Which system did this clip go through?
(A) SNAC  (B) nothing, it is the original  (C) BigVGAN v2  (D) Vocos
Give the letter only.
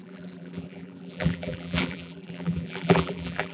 C